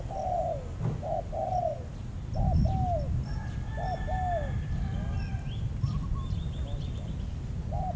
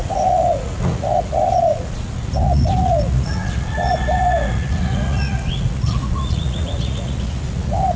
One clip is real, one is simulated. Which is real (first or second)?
first